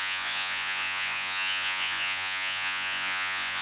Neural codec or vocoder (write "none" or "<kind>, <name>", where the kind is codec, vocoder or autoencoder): vocoder, Vocos